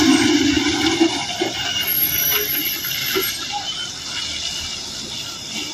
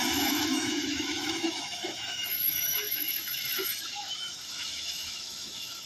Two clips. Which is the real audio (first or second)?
first